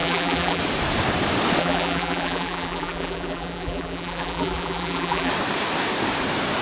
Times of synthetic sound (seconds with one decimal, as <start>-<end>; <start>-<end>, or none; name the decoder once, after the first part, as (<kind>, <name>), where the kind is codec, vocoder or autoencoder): 0.0-0.6 (vocoder, BigVGAN v2); 1.6-5.3